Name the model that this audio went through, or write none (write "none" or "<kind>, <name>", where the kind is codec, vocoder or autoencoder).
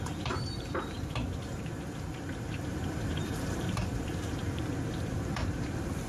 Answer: vocoder, BigVGAN v2